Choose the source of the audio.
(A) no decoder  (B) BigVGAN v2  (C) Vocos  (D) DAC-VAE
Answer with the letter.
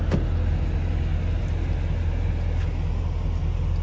A